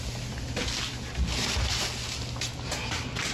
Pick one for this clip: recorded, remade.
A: recorded